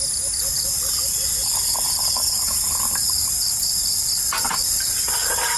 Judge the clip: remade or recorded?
recorded